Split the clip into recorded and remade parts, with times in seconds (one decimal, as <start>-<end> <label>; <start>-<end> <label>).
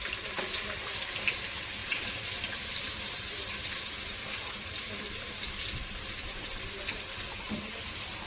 0.0-1.8 recorded; 1.8-5.0 remade; 5.0-8.3 recorded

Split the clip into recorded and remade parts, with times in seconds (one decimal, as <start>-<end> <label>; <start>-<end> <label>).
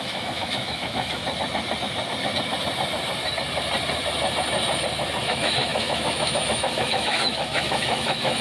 0.0-1.2 remade; 1.2-5.2 recorded; 5.2-8.4 remade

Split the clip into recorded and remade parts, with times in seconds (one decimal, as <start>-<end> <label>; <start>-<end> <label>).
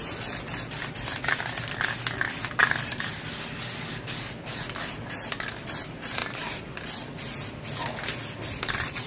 0.0-6.2 remade; 6.2-8.4 recorded; 8.4-9.1 remade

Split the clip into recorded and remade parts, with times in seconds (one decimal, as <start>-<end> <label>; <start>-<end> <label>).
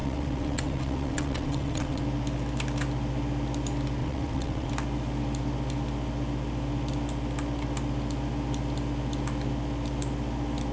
0.0-2.0 remade; 2.0-4.0 recorded; 4.0-4.7 remade; 4.7-10.7 recorded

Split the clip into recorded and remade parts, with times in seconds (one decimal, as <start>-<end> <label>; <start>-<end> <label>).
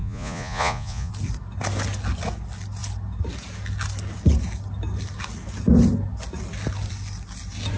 0.0-1.1 remade; 1.1-7.8 recorded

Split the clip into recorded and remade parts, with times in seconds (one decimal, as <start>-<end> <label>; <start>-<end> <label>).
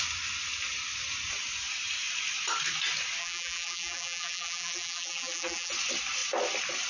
0.0-3.2 recorded; 3.2-5.7 remade; 5.7-6.9 recorded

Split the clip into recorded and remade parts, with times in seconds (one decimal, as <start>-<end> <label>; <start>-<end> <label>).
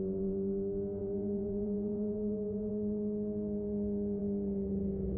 0.0-1.0 recorded; 1.0-2.7 remade; 2.7-5.2 recorded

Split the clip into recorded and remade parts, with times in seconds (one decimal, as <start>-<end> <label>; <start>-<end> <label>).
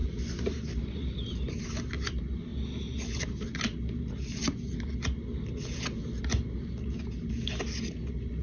0.0-1.9 remade; 1.9-8.4 recorded